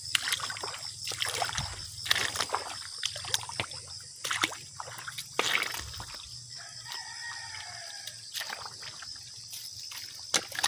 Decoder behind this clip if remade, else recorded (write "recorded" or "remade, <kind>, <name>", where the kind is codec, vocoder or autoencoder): recorded